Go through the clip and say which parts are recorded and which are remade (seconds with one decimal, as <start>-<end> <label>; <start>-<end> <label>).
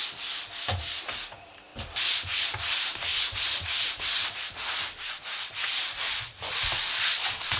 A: 0.0-1.7 remade; 1.7-2.4 recorded; 2.4-3.1 remade; 3.1-3.8 recorded; 3.8-7.6 remade